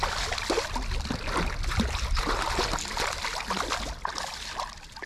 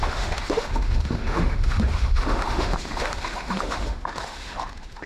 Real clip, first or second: first